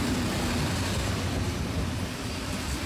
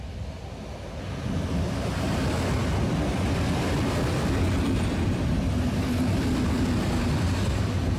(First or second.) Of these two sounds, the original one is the second